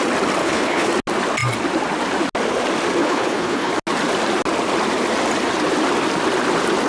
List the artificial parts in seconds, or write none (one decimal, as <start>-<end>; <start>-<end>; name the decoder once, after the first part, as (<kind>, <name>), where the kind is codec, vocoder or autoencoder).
0.4-0.9 (codec, HILCodec); 3.0-3.7